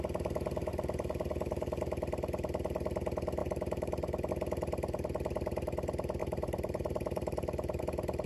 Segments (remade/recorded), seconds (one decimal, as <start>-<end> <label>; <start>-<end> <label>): 0.0-0.7 recorded; 0.7-1.8 remade; 1.8-3.4 recorded; 3.4-4.3 remade; 4.3-6.2 recorded; 6.2-7.8 remade; 7.8-8.3 recorded